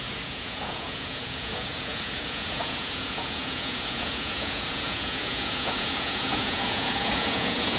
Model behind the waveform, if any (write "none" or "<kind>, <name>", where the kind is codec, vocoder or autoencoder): vocoder, Vocos